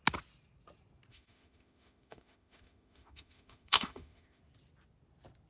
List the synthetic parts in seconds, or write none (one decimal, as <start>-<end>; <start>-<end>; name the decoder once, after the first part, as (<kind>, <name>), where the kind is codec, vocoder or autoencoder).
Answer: 1.1-4.4 (autoencoder, DAC-VAE)